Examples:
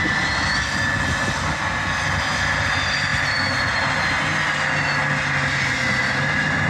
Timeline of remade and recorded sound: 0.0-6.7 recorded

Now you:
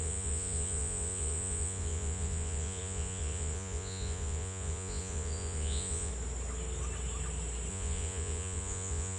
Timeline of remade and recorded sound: 0.0-6.1 remade; 6.1-7.7 recorded; 7.7-9.2 remade

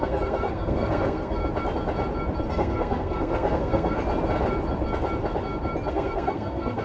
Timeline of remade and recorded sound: 0.0-1.4 remade; 1.4-2.5 recorded; 2.5-4.0 remade; 4.0-5.9 recorded; 5.9-6.8 remade

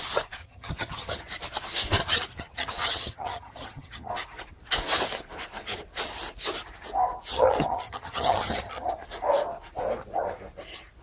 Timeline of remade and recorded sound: 0.0-0.4 recorded; 0.4-1.2 remade; 1.2-2.0 recorded; 2.0-4.1 remade; 4.1-7.3 recorded; 7.3-8.9 remade; 8.9-11.0 recorded

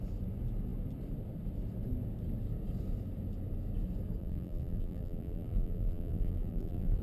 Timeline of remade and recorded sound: 0.0-4.2 recorded; 4.2-7.0 remade

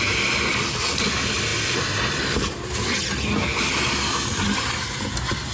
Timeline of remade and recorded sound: 0.0-5.5 recorded